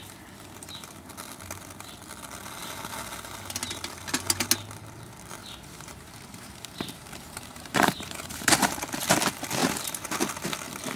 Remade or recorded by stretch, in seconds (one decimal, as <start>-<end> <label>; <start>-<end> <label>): 0.0-5.4 recorded; 5.4-9.1 remade; 9.1-11.0 recorded